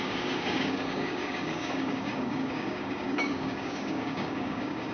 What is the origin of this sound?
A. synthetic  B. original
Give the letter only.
A